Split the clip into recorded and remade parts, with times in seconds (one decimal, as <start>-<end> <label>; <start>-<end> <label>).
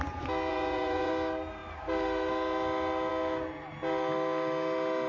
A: 0.0-0.5 recorded; 0.5-1.1 remade; 1.1-5.1 recorded